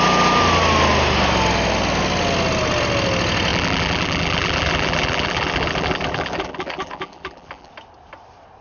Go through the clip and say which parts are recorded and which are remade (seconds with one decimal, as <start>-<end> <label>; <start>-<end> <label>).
0.0-3.5 recorded; 3.5-7.7 remade; 7.7-8.6 recorded